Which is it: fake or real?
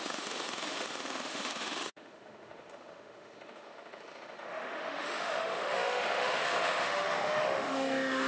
fake